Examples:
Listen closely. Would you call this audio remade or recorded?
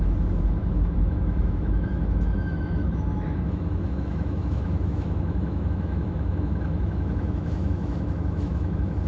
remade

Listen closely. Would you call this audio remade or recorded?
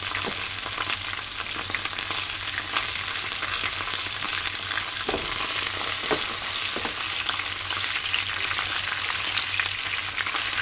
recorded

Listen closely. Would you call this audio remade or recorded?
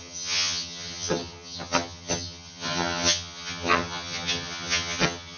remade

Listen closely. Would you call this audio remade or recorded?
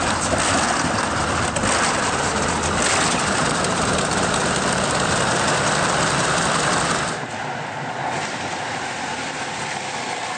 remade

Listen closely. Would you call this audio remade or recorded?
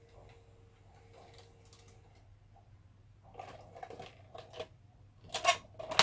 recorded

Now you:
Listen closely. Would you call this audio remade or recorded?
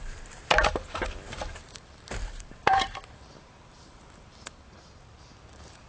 remade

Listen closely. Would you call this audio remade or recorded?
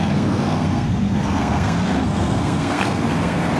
remade